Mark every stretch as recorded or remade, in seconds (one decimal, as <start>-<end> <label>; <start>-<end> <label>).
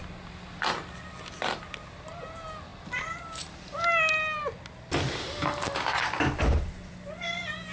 0.0-7.7 recorded